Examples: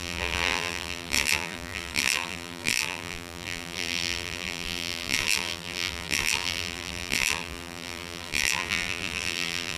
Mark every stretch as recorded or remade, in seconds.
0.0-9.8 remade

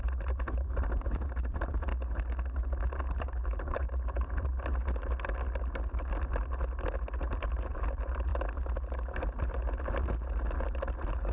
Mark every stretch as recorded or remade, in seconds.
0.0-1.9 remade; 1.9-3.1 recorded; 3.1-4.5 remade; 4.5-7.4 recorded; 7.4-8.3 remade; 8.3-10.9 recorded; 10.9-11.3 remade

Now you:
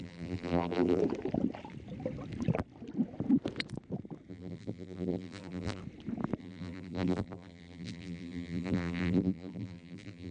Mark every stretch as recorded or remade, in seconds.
0.0-1.0 remade; 1.0-4.3 recorded; 4.3-5.8 remade; 5.8-6.4 recorded; 6.4-10.3 remade

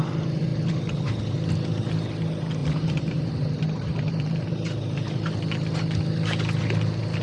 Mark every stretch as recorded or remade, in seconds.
0.0-0.5 recorded; 0.5-1.2 remade; 1.2-2.6 recorded; 2.6-5.3 remade; 5.3-7.2 recorded

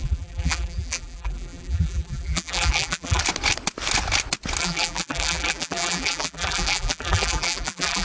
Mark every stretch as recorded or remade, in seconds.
0.0-3.2 remade; 3.2-4.6 recorded; 4.6-8.0 remade